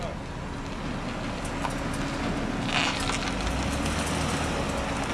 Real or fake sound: real